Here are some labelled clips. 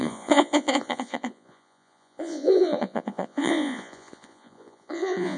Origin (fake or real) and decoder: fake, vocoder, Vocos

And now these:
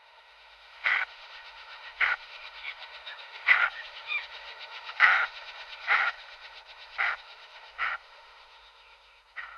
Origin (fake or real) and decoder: fake, autoencoder, DAC-VAE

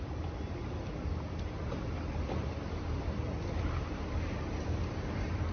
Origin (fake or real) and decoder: fake, vocoder, BigVGAN v2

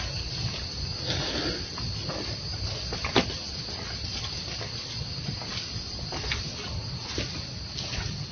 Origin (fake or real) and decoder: real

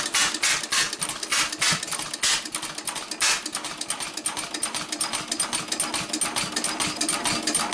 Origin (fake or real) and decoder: real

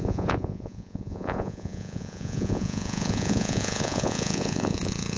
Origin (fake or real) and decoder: fake, vocoder, Vocos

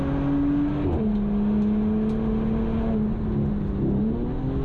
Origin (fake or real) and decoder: real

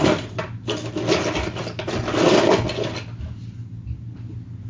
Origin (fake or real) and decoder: real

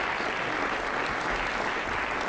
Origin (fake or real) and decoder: real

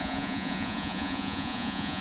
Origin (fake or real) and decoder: fake, vocoder, Vocos